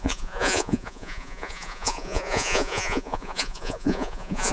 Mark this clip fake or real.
fake